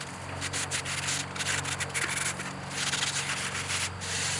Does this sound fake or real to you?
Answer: real